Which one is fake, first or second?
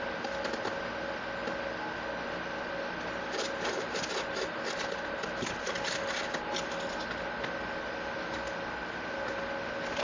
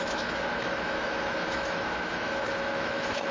second